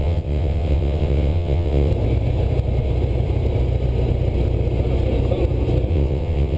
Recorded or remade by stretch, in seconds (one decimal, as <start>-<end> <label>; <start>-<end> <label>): 0.0-1.9 remade; 1.9-5.9 recorded; 5.9-6.6 remade

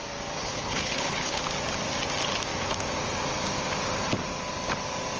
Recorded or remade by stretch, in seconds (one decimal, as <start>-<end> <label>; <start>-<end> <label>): 0.0-0.4 recorded; 0.4-1.4 remade; 1.4-5.2 recorded

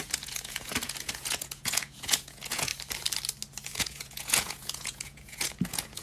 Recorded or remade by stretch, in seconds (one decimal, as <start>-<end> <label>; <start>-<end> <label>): 0.0-2.7 remade; 2.7-3.8 recorded; 3.8-6.0 remade

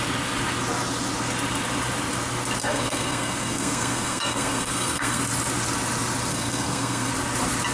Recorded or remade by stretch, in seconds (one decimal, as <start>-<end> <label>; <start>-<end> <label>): 0.0-2.6 recorded; 2.6-5.2 remade; 5.2-6.3 recorded; 6.3-7.1 remade; 7.1-7.7 recorded

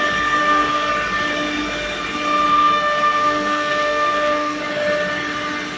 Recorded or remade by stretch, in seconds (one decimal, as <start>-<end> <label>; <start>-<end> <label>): 0.0-0.4 recorded; 0.4-0.9 remade; 0.9-2.5 recorded; 2.5-4.6 remade; 4.6-5.8 recorded

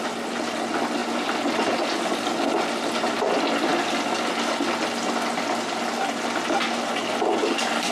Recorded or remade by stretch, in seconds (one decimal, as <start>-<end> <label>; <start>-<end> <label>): 0.0-1.0 recorded; 1.0-1.7 remade; 1.7-7.9 recorded